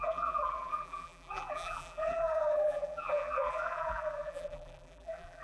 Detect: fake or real fake